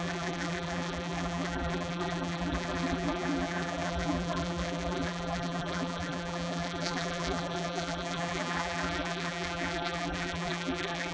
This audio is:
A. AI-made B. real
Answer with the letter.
A